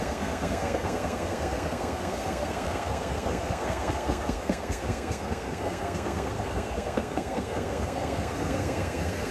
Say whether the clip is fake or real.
fake